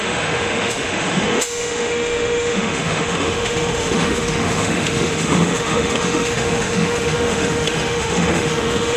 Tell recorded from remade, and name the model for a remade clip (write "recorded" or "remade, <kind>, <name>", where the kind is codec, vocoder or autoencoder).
remade, autoencoder, DAC-VAE